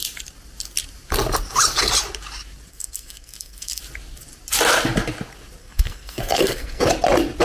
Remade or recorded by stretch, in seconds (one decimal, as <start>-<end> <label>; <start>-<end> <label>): 0.0-2.7 recorded; 2.7-3.8 remade; 3.8-5.6 recorded; 5.6-6.8 remade; 6.8-7.4 recorded